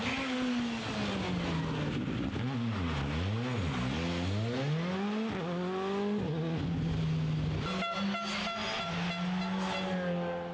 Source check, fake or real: real